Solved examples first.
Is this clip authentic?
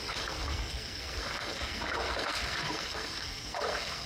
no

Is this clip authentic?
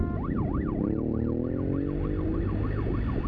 yes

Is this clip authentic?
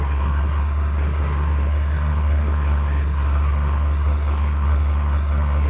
no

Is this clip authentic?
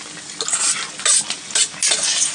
yes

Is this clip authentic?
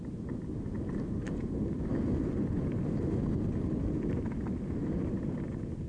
yes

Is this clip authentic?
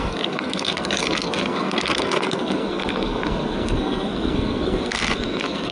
no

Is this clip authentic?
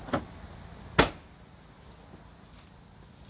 yes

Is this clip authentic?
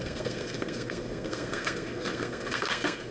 no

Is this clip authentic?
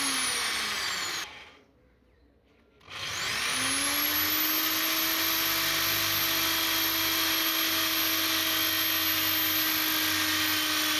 yes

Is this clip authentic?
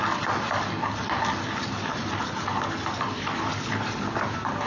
yes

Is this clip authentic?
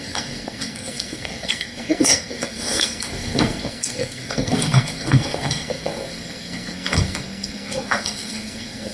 no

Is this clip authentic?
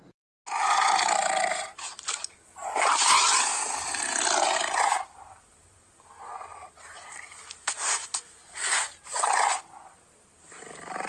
yes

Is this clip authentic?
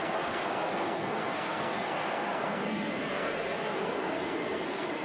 no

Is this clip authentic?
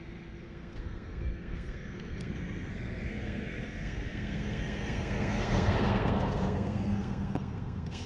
no